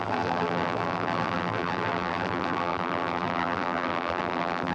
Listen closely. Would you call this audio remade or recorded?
remade